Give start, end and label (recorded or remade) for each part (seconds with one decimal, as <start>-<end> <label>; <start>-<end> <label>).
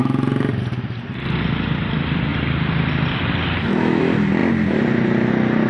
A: 0.0-0.6 recorded; 0.6-2.3 remade; 2.3-4.0 recorded; 4.0-4.4 remade; 4.4-5.3 recorded; 5.3-5.7 remade